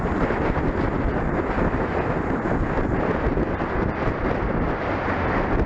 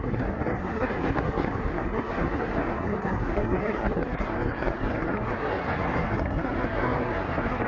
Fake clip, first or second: second